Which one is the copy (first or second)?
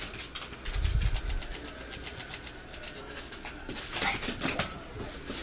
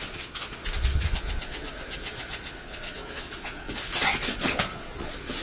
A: second